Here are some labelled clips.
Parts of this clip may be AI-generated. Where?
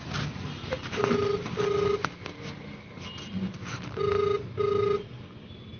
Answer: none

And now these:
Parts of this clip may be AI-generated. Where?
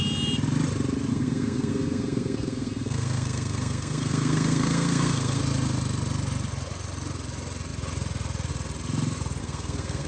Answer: 1.1-5.4; 9.4-10.1